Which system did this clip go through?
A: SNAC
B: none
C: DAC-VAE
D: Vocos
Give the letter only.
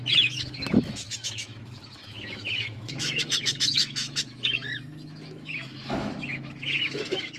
C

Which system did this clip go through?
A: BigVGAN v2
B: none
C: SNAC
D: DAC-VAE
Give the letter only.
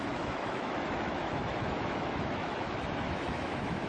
D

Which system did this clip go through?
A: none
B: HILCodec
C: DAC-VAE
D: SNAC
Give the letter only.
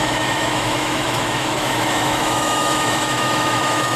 C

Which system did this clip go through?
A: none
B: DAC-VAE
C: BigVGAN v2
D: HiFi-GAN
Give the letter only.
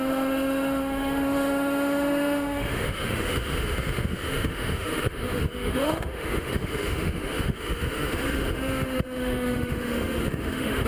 B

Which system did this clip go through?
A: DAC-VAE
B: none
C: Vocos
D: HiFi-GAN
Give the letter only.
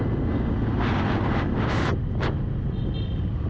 B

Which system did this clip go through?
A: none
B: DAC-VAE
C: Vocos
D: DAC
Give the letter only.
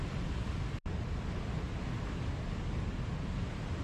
A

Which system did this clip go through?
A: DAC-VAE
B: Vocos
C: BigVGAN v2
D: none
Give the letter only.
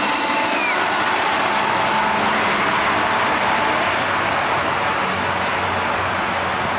D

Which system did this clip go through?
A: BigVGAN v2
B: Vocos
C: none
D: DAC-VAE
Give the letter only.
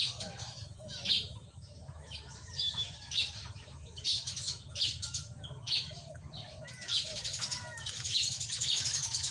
D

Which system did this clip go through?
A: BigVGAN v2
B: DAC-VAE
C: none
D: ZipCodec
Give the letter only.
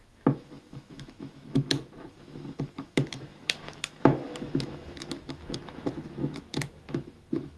B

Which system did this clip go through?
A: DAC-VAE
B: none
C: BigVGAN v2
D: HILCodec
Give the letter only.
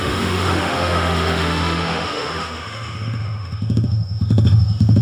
A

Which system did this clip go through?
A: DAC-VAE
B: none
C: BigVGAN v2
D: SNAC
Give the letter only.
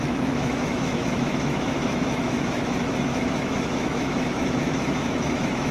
A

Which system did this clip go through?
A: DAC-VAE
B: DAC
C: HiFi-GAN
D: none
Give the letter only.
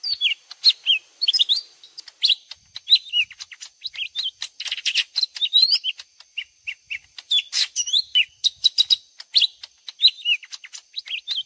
D